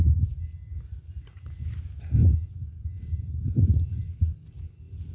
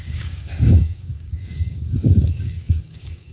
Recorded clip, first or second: first